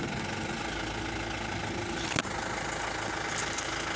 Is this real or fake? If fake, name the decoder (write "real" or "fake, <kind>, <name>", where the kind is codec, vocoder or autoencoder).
real